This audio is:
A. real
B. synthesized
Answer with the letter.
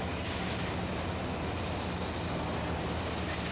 A